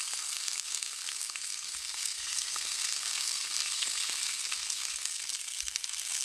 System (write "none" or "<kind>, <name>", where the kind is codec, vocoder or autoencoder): codec, SNAC